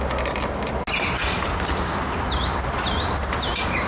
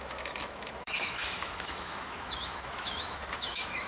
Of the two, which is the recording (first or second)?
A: first